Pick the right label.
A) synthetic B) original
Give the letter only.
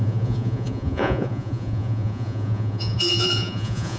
A